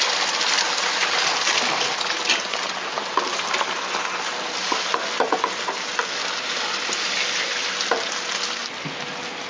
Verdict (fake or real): real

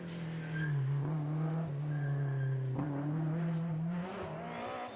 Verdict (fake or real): real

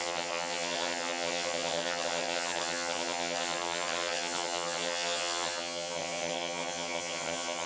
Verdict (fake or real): fake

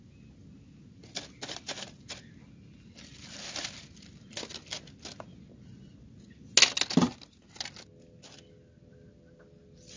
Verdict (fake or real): real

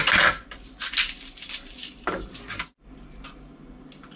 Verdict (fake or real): real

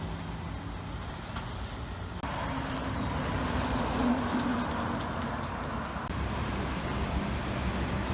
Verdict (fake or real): real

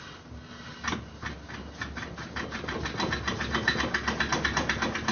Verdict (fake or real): real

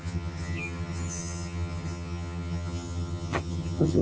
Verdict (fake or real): fake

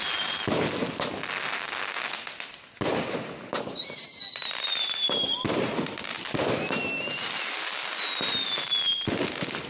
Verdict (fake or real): real